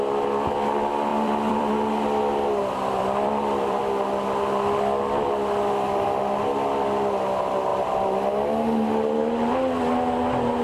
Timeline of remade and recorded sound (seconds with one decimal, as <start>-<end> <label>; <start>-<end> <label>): 0.0-1.1 recorded; 1.1-1.7 remade; 1.7-2.6 recorded; 2.6-3.8 remade; 3.8-10.6 recorded